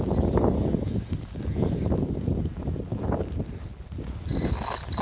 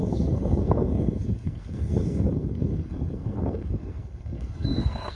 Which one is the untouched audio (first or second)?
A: first